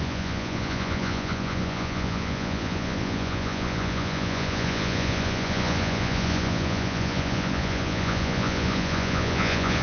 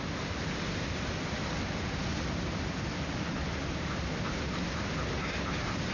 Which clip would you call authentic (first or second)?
second